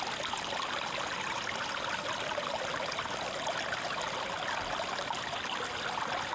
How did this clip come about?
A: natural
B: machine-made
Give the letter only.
A